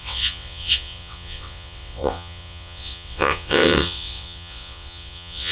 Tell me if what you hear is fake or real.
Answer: fake